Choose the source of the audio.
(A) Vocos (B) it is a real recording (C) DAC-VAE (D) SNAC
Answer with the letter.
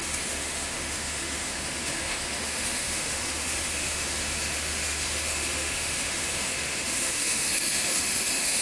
C